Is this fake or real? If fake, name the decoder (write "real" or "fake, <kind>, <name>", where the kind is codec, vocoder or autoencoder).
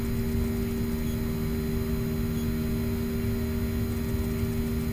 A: real